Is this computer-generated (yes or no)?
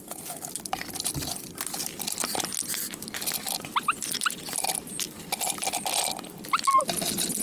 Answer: no